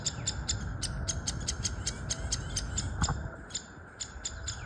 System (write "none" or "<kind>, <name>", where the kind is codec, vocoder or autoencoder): none